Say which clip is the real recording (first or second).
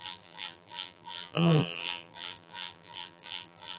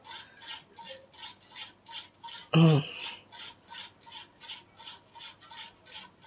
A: second